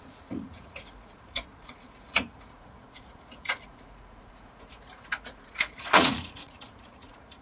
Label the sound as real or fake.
fake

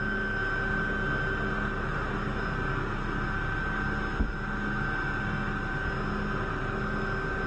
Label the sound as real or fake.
real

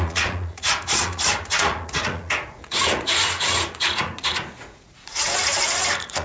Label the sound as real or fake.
fake